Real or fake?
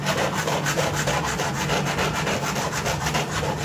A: real